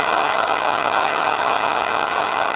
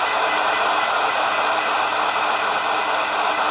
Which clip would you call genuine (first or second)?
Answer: second